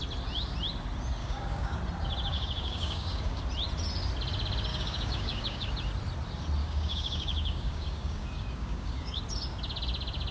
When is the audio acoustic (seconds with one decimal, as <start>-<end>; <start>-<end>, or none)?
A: 0.0-1.2; 1.8-2.3; 3.4-4.7; 5.7-6.6; 9.2-10.3